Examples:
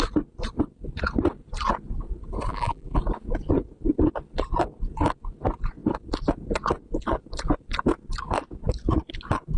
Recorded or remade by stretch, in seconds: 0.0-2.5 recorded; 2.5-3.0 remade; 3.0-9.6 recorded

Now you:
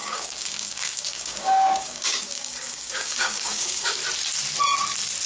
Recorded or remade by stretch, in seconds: 0.0-4.0 remade; 4.0-5.3 recorded

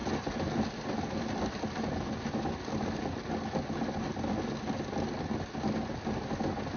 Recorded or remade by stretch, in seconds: 0.0-6.8 recorded